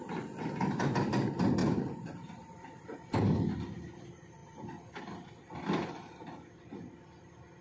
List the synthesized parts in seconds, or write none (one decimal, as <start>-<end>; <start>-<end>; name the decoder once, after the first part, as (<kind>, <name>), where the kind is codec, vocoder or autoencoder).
1.6-2.8 (vocoder, BigVGAN v2)

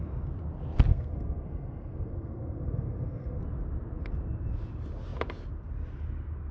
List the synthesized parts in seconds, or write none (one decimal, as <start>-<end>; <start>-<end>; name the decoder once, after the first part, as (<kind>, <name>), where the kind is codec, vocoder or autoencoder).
0.9-3.4 (codec, SNAC)

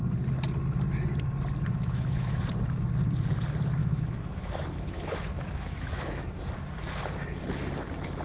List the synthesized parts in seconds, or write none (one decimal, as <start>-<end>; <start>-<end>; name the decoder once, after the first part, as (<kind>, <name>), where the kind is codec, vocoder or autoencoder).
1.7-2.4 (autoencoder, DAC-VAE); 3.8-6.4

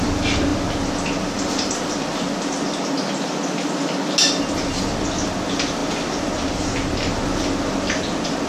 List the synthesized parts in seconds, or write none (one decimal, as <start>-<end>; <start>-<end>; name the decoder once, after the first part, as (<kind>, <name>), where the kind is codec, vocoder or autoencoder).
none

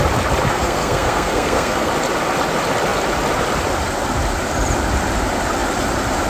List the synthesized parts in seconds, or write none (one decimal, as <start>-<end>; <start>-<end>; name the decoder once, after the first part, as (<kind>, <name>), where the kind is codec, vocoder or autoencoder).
0.5-1.9 (codec, SNAC)